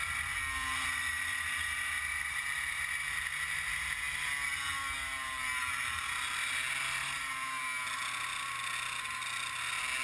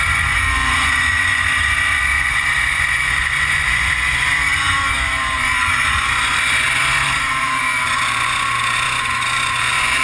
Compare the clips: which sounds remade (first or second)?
second